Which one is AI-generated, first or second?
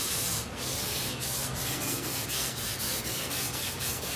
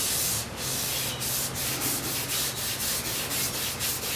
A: first